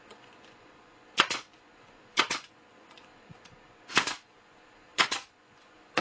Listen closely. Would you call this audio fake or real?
fake